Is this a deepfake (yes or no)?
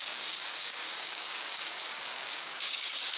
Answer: yes